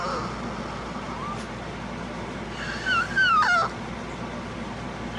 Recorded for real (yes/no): yes